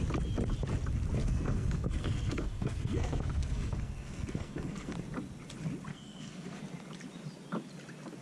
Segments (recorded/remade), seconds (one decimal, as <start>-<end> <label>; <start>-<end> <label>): 0.0-1.2 recorded; 1.2-4.9 remade; 4.9-5.9 recorded; 5.9-6.6 remade; 6.6-8.2 recorded